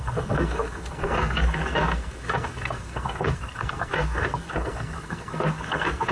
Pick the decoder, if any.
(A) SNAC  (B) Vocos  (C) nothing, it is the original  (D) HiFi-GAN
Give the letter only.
A